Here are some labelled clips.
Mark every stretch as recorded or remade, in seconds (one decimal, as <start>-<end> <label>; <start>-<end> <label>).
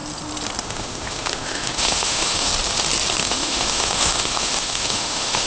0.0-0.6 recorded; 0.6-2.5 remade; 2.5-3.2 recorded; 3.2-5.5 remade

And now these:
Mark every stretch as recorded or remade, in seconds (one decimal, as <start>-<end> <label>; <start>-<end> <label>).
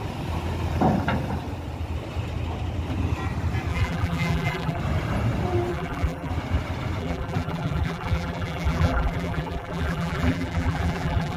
0.0-3.7 recorded; 3.7-4.8 remade; 4.8-5.7 recorded; 5.7-6.3 remade; 6.3-7.0 recorded; 7.0-11.4 remade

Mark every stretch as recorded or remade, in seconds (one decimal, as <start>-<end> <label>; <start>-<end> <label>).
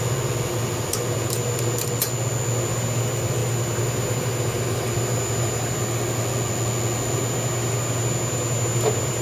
0.0-9.2 recorded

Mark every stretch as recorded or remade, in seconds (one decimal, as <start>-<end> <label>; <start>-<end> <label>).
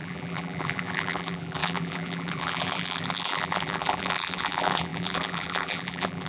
0.0-6.3 remade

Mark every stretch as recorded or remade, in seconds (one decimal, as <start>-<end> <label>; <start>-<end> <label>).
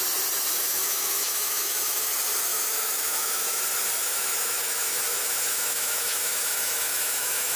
0.0-0.7 recorded; 0.7-2.1 remade; 2.1-2.5 recorded; 2.5-3.6 remade; 3.6-4.0 recorded; 4.0-7.6 remade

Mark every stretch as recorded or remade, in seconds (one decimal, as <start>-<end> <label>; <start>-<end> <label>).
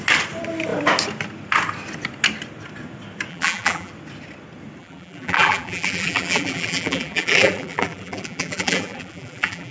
0.0-3.3 recorded; 3.3-3.9 remade; 3.9-4.8 recorded; 4.8-9.7 remade